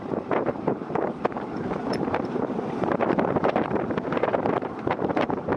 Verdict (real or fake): fake